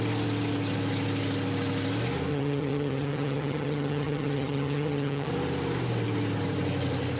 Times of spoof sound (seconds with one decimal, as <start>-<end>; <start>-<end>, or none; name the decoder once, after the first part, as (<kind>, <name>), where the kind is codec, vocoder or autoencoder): 2.3-5.3 (vocoder, HiFi-GAN)